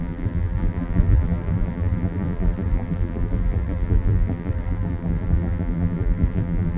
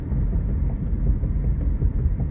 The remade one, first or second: first